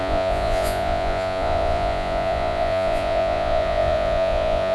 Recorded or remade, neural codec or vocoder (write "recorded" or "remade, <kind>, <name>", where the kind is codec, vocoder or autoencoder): remade, vocoder, Vocos